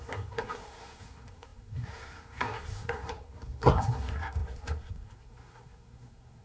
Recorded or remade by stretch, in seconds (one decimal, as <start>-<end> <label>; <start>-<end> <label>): 0.0-6.4 remade